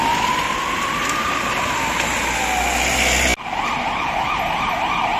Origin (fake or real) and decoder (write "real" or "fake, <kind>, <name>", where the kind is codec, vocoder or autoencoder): real